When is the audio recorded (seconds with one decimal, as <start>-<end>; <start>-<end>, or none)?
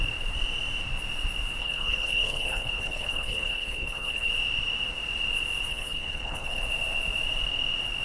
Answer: 0.0-1.6; 4.3-5.7; 6.6-8.0